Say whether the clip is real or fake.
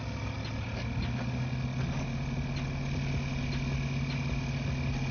real